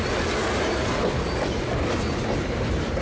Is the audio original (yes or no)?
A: yes